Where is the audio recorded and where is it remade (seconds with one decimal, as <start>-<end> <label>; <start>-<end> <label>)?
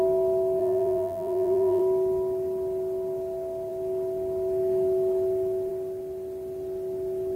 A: 0.0-0.6 recorded; 0.6-1.8 remade; 1.8-7.4 recorded